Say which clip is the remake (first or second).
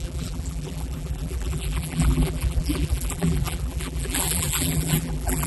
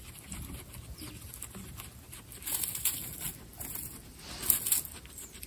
first